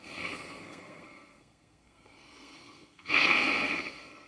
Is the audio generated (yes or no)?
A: yes